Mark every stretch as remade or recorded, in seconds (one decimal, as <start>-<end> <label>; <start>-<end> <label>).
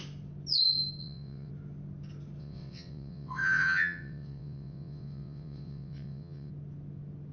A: 0.0-1.0 recorded; 1.0-1.5 remade; 1.5-2.4 recorded; 2.4-6.5 remade; 6.5-7.3 recorded